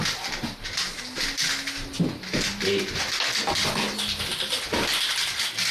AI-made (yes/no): no